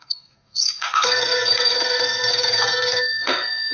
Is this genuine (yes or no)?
no